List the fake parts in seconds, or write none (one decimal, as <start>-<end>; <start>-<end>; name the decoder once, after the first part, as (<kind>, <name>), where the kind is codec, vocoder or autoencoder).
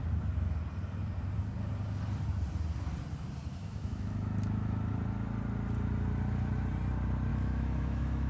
3.5-4.9 (autoencoder, DAC-VAE); 7.3-8.3